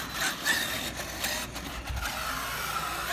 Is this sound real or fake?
real